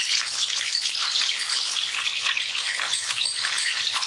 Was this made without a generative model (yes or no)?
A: no